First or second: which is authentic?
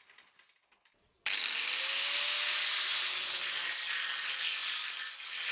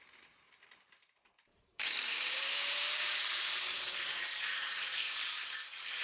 first